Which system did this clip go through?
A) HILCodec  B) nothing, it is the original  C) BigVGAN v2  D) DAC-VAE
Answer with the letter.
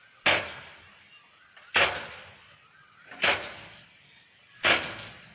B